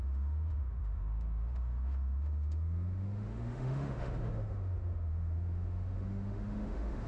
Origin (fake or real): fake